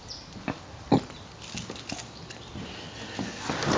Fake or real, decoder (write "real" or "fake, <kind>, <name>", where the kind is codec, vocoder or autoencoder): real